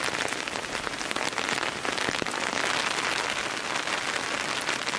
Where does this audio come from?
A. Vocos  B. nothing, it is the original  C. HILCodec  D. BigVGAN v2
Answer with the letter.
B